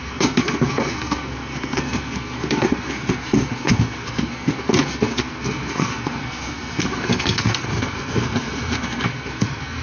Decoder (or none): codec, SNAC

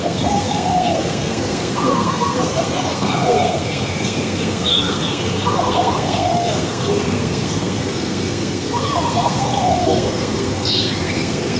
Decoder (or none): codec, SNAC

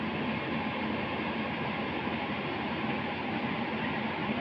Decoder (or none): none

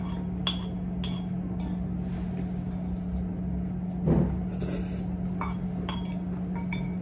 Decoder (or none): none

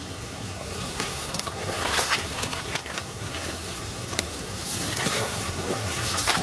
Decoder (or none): codec, SNAC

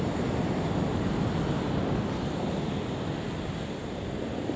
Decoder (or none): none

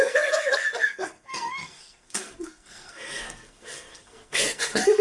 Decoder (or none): codec, SNAC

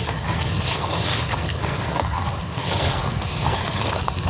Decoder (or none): codec, SNAC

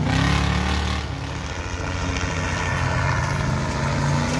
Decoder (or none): none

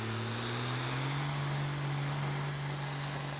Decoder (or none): none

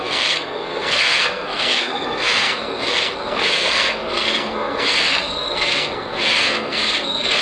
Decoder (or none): codec, SNAC